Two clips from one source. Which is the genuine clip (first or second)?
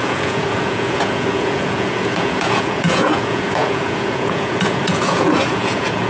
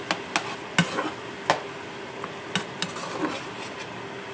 second